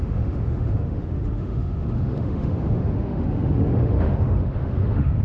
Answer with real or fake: fake